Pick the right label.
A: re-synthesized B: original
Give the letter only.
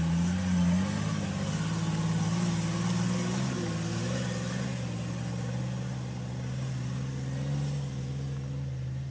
B